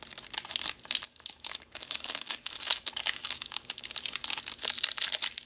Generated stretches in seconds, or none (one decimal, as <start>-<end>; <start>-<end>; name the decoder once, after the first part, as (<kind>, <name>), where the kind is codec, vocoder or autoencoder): 1.1-4.4 (codec, DAC)